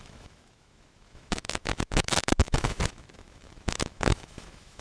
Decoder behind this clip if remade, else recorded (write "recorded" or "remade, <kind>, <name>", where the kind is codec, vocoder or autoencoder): remade, autoencoder, DAC-VAE